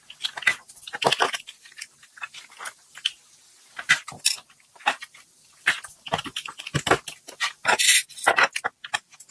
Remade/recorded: recorded